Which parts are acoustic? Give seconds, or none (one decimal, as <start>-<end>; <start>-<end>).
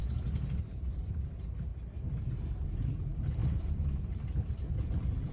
0.0-0.6; 1.7-2.3